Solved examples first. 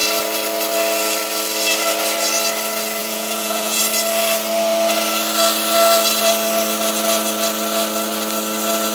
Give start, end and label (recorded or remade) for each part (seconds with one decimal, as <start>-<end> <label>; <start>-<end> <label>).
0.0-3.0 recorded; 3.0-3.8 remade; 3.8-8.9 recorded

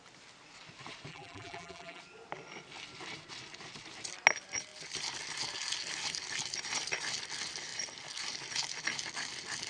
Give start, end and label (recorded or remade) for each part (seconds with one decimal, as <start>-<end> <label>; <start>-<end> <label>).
0.0-1.1 recorded; 1.1-2.0 remade; 2.0-9.7 recorded

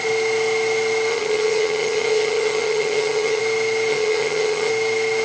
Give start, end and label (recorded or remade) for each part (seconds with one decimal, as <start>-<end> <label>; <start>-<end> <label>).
0.0-1.1 recorded; 1.1-3.4 remade; 3.4-3.9 recorded; 3.9-4.7 remade; 4.7-5.2 recorded

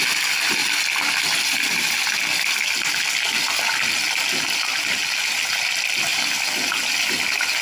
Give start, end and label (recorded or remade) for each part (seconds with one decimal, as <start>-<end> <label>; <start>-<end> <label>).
0.0-0.6 recorded; 0.6-1.9 remade; 1.9-6.1 recorded; 6.1-6.7 remade; 6.7-7.6 recorded